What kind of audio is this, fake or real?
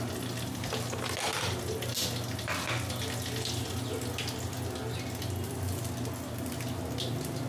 real